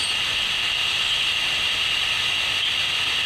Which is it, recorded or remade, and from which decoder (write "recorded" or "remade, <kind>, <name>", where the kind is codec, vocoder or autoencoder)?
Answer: recorded